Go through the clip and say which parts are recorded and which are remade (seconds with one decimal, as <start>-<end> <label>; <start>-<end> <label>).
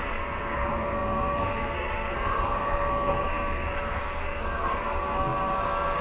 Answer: 0.0-6.0 remade